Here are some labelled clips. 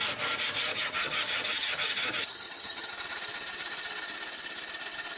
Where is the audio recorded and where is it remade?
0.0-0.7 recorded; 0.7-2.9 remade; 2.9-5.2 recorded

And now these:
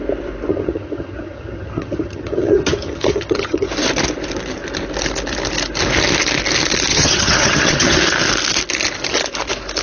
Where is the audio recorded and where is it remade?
0.0-0.5 recorded; 0.5-3.7 remade; 3.7-6.9 recorded; 6.9-8.0 remade; 8.0-9.8 recorded